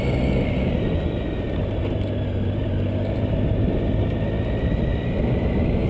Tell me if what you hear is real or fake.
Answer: real